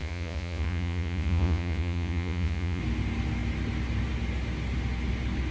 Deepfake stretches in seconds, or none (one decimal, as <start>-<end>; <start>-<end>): 0.0-2.8